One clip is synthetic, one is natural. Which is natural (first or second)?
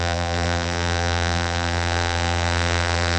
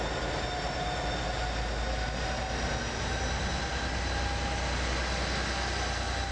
second